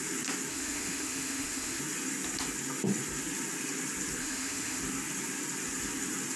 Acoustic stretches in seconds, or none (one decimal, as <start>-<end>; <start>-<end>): 0.0-0.5; 1.8-4.2; 4.8-6.4